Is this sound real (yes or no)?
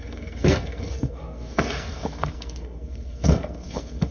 no